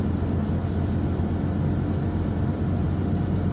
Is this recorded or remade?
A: recorded